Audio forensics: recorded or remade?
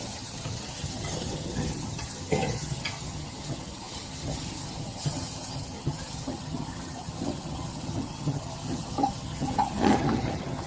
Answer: remade